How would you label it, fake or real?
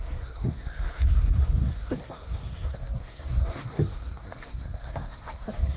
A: fake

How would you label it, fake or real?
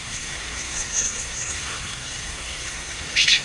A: fake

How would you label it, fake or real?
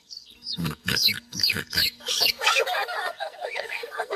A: fake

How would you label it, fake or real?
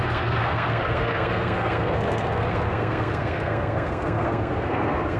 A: fake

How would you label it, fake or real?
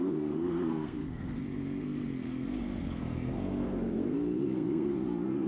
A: fake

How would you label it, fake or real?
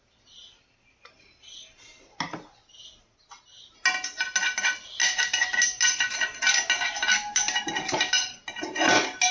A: real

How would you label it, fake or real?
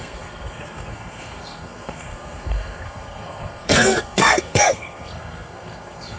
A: fake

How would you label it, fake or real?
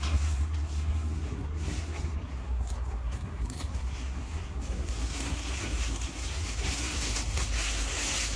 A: fake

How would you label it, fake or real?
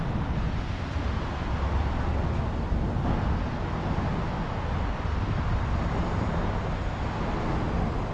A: real